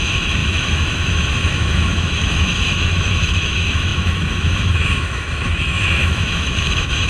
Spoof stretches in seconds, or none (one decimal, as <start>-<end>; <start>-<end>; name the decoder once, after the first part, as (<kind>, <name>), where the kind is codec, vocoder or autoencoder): 0.0-7.1 (autoencoder, DAC-VAE)